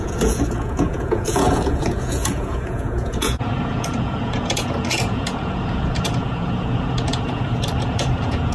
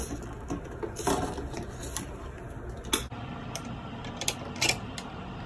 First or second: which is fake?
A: first